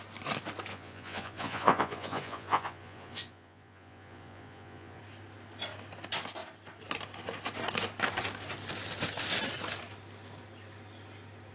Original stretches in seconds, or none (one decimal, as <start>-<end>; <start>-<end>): 0.0-0.7; 5.0-11.5